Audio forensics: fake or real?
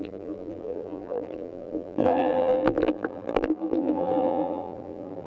fake